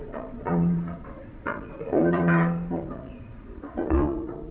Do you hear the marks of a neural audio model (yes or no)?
yes